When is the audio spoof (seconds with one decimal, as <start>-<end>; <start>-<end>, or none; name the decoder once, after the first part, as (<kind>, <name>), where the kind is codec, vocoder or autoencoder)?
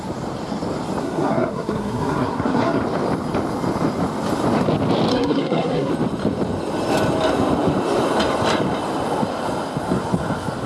1.0-2.8 (codec, SNAC); 5.1-5.9